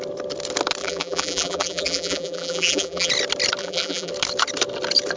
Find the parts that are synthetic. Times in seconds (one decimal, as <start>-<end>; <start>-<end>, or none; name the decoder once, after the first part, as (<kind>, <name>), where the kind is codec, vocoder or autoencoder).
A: 0.8-3.1 (vocoder, BigVGAN v2); 3.6-4.1

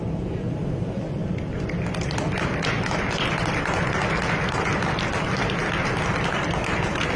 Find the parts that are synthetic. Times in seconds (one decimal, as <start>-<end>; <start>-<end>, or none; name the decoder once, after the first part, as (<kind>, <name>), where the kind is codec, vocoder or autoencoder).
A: 0.0-1.2 (vocoder, BigVGAN v2); 1.9-7.2

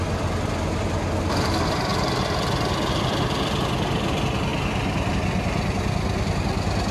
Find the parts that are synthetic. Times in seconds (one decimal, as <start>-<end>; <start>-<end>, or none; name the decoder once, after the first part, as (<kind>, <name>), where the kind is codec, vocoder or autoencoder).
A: none